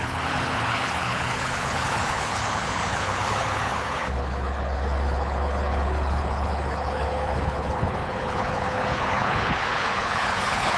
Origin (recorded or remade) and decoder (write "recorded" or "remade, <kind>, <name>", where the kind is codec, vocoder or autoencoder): remade, codec, HILCodec